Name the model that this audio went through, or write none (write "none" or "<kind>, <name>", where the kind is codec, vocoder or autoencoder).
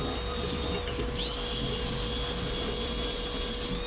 none